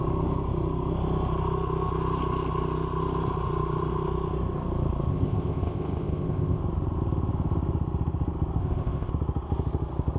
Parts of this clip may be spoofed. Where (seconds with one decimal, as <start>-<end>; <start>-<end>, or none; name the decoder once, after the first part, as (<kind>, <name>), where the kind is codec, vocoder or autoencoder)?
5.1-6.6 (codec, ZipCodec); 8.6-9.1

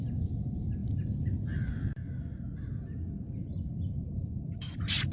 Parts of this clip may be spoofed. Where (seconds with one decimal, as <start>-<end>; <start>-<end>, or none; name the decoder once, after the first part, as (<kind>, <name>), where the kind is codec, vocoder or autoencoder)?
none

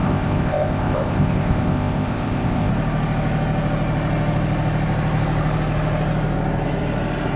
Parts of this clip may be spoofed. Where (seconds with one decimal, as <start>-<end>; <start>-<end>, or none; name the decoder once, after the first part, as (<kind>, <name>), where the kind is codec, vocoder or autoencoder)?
0.0-2.7 (codec, ZipCodec)

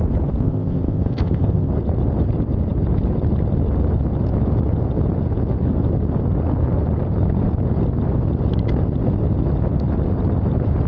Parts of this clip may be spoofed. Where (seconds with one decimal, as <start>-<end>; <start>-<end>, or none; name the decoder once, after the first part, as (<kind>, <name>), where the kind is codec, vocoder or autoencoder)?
0.4-1.7 (codec, ZipCodec)

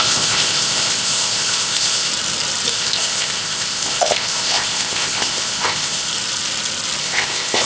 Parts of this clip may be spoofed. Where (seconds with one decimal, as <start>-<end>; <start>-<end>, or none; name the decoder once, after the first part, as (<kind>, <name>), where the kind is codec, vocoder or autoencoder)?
0.0-2.1 (codec, ZipCodec); 2.7-6.1; 7.0-7.7